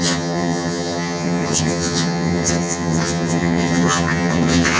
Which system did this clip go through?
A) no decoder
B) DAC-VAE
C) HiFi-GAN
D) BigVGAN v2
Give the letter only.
C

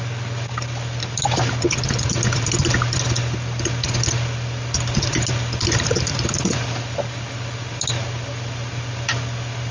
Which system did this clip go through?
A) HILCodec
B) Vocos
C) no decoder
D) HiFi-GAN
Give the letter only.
C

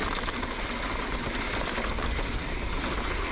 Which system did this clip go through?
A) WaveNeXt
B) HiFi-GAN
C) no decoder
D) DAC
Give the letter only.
C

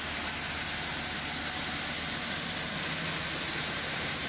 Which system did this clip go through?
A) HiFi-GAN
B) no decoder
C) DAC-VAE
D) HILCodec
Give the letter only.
B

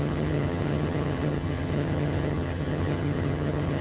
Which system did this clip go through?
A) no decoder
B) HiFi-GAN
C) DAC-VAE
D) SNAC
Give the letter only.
B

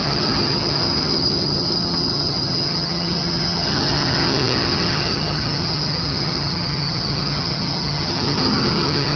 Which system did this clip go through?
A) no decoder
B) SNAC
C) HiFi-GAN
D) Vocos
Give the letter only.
C